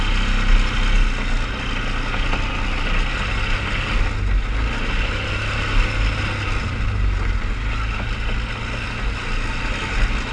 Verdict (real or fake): real